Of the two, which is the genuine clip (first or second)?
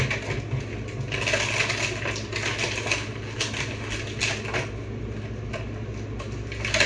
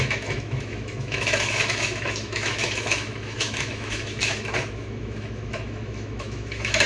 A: first